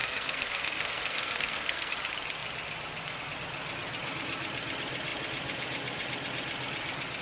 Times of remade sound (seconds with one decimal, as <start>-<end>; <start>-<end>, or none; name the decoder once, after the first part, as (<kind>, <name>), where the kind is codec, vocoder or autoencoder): 0.0-1.9 (codec, SNAC)